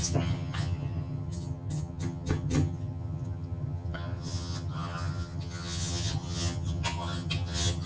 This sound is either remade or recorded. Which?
remade